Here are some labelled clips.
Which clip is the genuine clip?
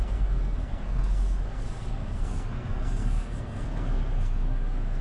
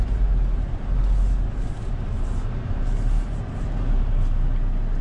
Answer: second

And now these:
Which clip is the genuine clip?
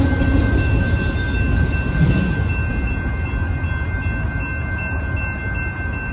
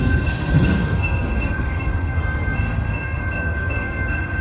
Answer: first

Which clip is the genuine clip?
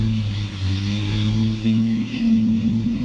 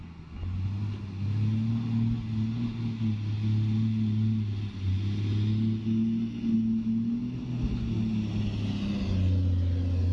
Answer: second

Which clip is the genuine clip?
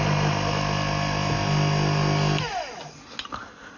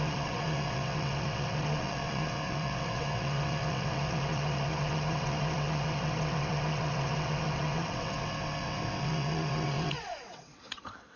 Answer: first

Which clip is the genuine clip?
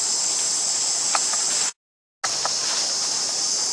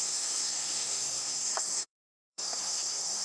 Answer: first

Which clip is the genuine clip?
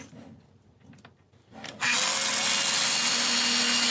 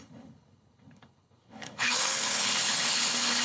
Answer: first